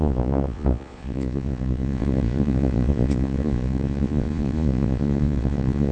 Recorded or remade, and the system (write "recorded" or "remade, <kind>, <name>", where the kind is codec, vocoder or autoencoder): remade, vocoder, Vocos